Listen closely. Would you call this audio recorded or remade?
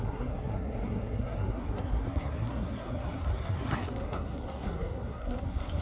remade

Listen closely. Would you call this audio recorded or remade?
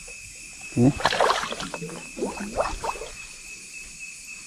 remade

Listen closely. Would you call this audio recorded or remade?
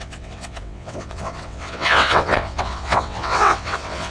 remade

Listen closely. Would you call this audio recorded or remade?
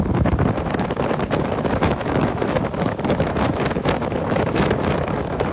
remade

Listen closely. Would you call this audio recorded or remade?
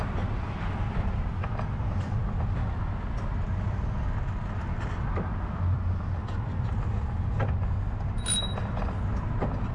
recorded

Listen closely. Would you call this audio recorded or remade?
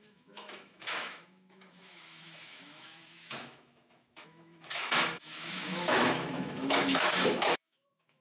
remade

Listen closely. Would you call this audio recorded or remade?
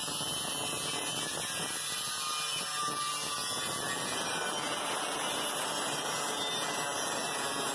recorded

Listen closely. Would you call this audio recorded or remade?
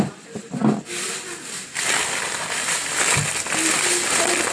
remade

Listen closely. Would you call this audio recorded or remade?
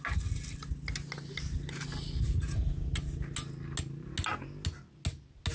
recorded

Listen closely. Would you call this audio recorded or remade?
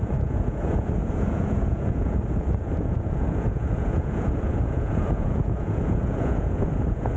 remade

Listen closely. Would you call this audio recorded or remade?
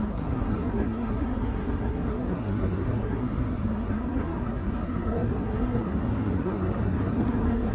remade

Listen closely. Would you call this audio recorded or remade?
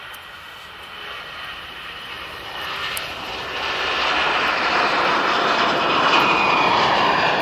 remade